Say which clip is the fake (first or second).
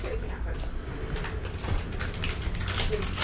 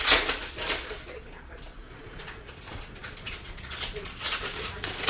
second